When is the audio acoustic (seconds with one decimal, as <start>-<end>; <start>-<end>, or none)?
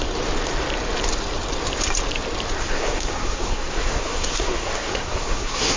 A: 0.0-2.6